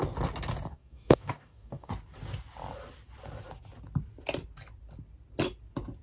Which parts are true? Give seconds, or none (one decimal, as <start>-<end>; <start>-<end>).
0.0-0.7; 1.9-6.0